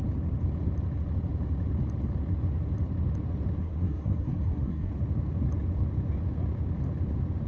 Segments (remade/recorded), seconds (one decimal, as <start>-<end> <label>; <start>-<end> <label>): 0.0-3.6 recorded; 3.6-4.9 remade; 4.9-7.5 recorded